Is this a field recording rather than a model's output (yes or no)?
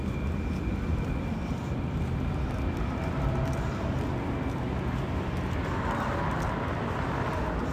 yes